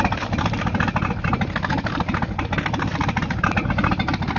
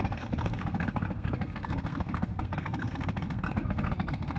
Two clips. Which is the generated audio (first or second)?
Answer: second